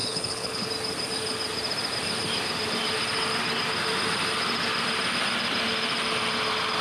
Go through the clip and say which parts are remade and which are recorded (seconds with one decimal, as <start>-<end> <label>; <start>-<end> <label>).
0.0-0.7 remade; 0.7-6.8 recorded